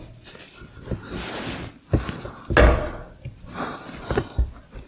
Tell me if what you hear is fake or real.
real